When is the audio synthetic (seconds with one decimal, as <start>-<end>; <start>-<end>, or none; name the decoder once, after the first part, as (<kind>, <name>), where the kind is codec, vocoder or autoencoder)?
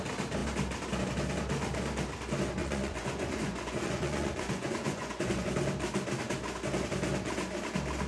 2.6-5.5 (vocoder, Vocos)